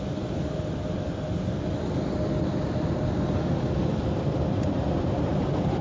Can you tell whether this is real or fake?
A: real